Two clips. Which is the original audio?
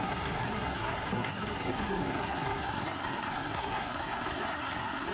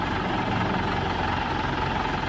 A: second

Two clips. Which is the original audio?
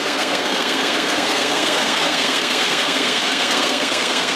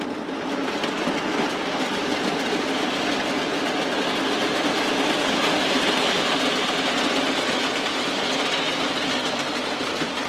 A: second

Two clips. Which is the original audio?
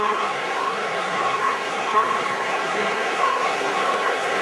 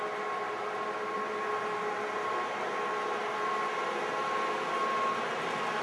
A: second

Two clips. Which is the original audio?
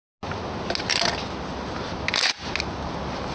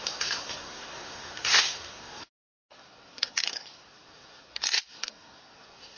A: first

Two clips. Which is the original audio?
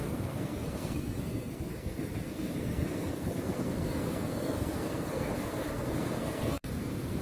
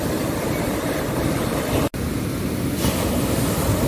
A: second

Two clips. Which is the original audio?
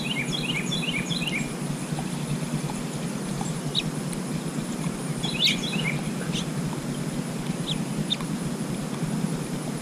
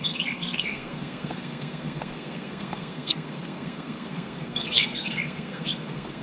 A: first